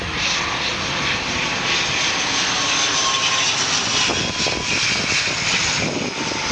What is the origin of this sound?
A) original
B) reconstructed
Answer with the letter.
A